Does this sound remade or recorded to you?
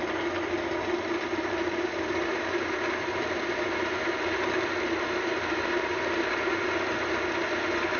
remade